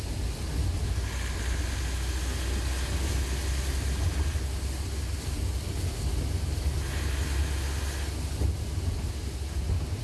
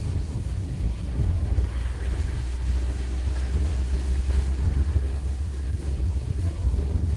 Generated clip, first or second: second